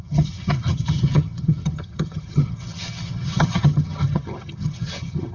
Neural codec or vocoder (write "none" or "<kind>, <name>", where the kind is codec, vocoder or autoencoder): vocoder, HiFi-GAN